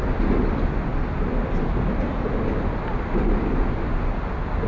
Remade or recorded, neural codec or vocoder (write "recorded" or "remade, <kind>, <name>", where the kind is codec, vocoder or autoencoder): recorded